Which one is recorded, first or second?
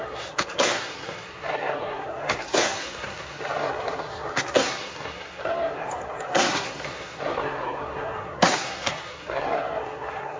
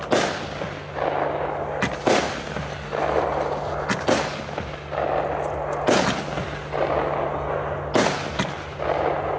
second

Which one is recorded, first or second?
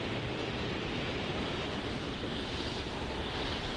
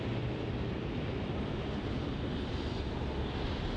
second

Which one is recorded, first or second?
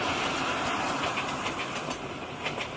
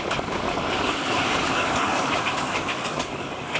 first